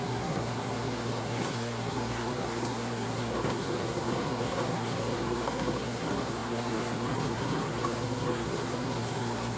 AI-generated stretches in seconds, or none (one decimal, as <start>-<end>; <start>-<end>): 0.0-9.6